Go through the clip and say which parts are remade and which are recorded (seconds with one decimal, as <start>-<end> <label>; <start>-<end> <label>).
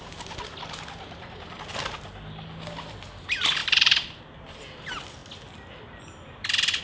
0.0-3.6 recorded; 3.6-4.2 remade; 4.2-6.8 recorded